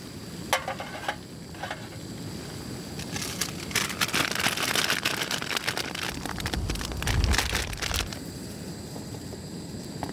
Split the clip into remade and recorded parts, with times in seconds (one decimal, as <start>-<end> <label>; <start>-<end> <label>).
0.0-10.1 recorded